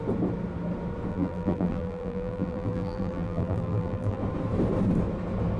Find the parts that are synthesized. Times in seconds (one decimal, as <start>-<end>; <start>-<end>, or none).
1.1-4.2